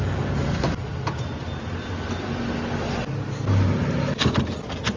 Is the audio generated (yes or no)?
no